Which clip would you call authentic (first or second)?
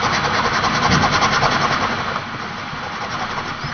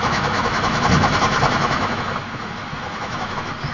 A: first